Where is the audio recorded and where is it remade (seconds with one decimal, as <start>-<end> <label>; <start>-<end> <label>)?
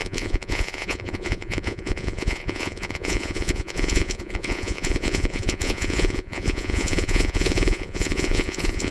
0.0-8.9 remade